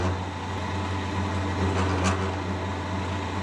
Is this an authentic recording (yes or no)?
yes